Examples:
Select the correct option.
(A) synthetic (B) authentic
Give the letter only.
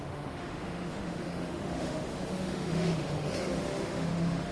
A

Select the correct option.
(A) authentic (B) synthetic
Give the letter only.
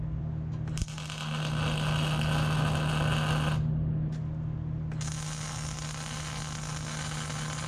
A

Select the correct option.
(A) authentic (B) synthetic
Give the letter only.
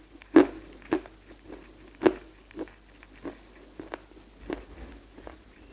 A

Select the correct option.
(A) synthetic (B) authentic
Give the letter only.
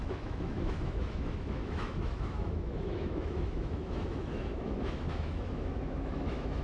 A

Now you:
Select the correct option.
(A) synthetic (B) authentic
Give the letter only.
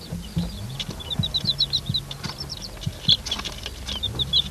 B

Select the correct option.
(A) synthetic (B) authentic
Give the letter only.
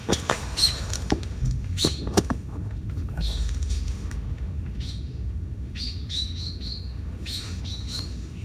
A